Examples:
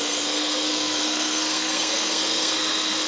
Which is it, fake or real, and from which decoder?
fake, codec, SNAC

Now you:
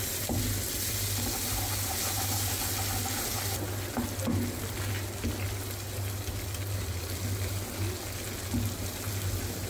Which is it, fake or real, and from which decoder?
real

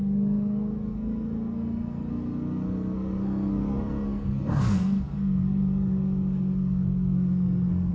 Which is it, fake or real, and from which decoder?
fake, codec, SNAC